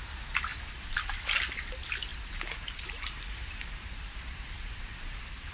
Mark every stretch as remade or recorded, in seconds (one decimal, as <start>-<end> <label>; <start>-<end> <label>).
0.0-0.5 recorded; 0.5-1.1 remade; 1.1-2.1 recorded; 2.1-5.5 remade